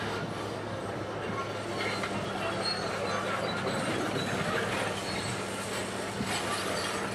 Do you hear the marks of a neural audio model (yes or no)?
no